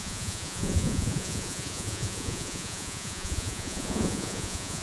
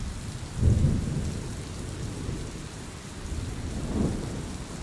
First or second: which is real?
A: second